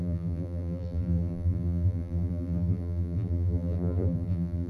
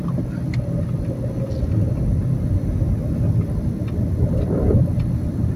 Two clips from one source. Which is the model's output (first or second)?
first